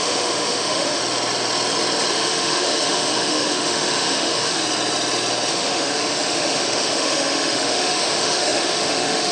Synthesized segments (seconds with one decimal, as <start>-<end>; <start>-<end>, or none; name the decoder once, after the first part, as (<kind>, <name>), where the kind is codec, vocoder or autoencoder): 0.0-1.0 (autoencoder, DAC-VAE); 2.1-4.6; 5.5-9.3